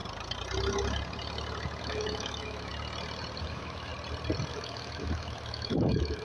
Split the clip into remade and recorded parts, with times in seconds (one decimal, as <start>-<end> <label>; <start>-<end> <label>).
0.0-1.8 recorded; 1.8-2.7 remade; 2.7-3.4 recorded; 3.4-3.9 remade; 3.9-4.5 recorded; 4.5-6.2 remade